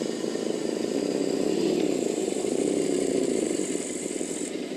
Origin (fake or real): fake